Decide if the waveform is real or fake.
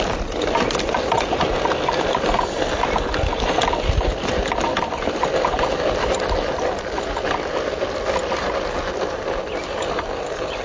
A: real